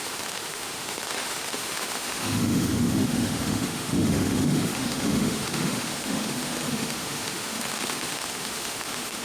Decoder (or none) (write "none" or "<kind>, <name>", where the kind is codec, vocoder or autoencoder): autoencoder, DAC-VAE